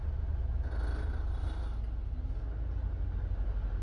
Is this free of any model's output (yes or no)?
yes